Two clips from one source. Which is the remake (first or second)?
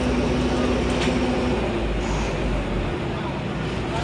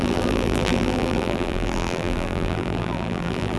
second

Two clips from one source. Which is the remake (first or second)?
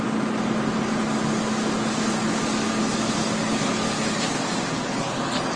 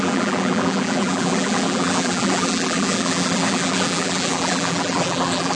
second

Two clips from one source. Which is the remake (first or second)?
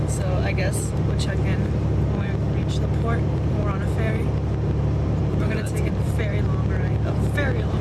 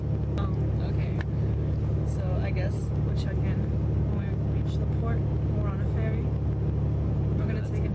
first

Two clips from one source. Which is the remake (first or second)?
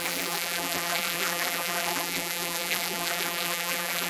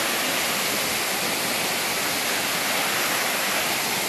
first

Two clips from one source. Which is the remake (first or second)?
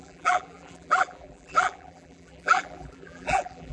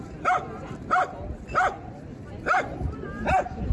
first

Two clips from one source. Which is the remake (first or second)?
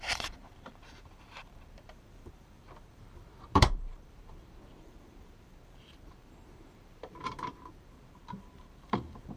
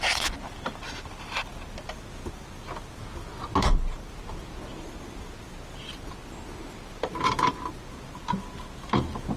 first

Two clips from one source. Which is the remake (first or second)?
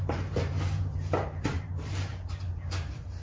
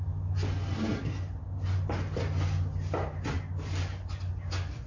first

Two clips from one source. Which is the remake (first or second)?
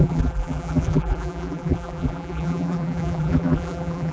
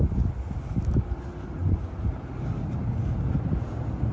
first